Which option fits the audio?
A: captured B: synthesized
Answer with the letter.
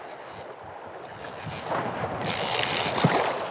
A